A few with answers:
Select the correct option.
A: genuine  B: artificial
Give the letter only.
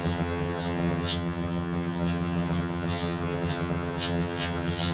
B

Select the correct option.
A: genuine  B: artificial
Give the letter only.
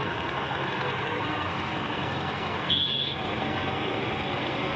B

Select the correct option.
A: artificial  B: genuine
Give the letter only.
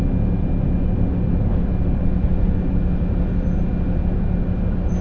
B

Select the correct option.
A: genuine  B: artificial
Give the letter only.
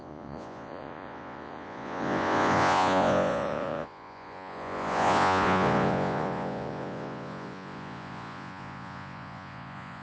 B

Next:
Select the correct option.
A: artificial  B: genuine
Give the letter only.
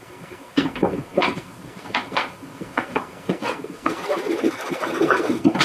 A